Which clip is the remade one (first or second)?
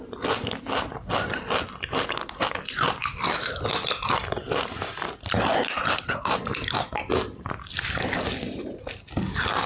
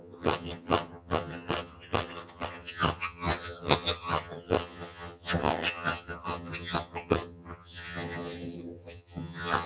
second